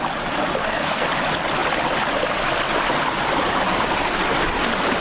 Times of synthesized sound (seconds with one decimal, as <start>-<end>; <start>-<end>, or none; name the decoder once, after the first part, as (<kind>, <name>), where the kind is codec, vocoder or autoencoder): 0.6-1.1 (codec, SNAC)